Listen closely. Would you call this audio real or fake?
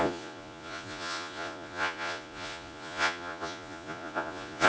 fake